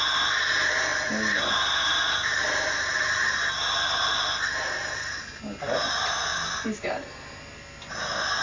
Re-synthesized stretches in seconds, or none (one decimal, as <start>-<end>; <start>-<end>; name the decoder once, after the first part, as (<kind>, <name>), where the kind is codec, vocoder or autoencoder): none